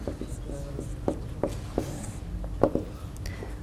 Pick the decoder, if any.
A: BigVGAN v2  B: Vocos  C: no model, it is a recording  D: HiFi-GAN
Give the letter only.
C